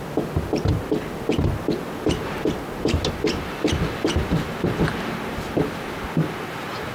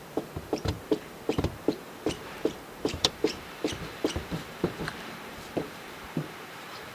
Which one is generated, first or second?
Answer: second